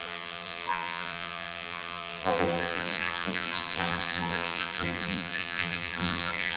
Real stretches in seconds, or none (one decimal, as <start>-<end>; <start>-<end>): none